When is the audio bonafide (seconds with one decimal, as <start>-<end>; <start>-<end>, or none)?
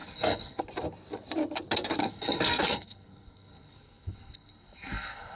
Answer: 0.6-2.0